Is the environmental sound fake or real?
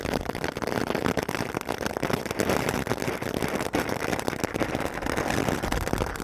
real